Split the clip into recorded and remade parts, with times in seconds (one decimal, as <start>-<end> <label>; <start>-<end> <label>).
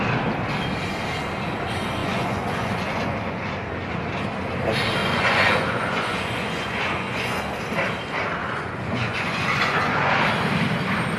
0.0-2.0 recorded; 2.0-3.5 remade; 3.5-5.0 recorded; 5.0-7.4 remade; 7.4-8.4 recorded; 8.4-10.1 remade; 10.1-11.2 recorded